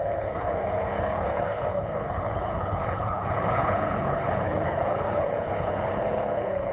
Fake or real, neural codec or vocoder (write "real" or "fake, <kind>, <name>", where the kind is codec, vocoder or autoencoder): fake, codec, HILCodec